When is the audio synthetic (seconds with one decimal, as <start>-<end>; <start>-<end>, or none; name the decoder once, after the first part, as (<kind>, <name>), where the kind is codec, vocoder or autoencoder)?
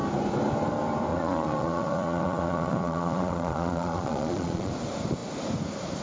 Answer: 1.1-4.7 (vocoder, Vocos)